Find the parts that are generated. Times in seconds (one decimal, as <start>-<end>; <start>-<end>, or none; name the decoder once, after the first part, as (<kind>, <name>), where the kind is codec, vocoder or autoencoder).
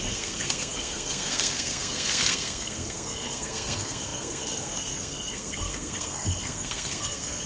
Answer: 0.0-7.5 (codec, SNAC)